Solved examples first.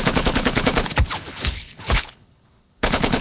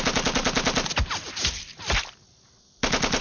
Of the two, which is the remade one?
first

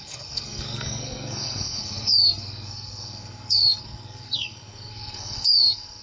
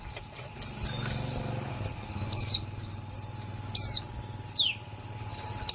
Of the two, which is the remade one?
first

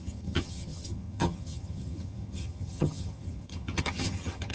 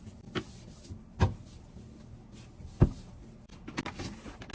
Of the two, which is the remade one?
first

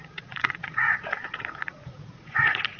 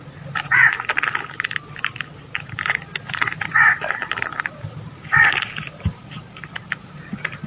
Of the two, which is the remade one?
first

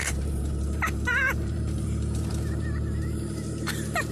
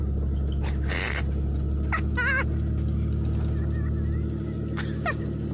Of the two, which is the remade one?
first